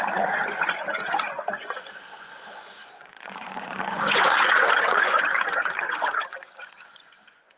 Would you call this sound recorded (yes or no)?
no